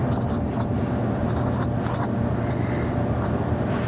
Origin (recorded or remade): recorded